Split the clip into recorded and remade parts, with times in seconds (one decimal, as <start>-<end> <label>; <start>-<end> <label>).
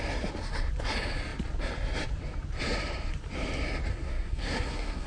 0.0-3.9 recorded; 3.9-5.1 remade